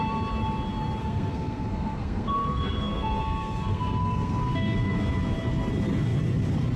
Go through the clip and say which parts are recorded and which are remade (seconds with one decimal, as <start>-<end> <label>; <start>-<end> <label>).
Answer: 0.0-1.0 recorded; 1.0-5.1 remade; 5.1-6.8 recorded